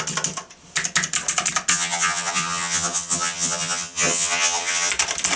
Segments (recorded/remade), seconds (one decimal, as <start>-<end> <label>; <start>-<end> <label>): 0.0-1.7 recorded; 1.7-4.9 remade; 4.9-5.4 recorded